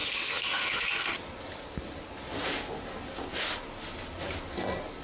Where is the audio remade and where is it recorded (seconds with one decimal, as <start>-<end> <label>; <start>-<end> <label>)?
0.0-0.9 remade; 0.9-5.0 recorded